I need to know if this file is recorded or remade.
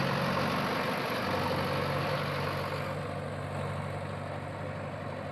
recorded